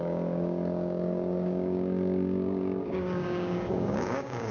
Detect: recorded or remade remade